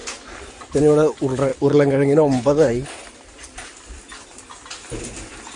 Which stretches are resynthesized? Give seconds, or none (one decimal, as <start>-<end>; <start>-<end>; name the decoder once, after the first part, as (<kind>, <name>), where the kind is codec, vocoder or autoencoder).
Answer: 1.5-2.7 (codec, HILCodec)